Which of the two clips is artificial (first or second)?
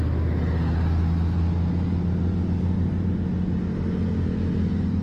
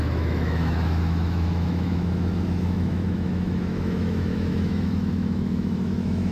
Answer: second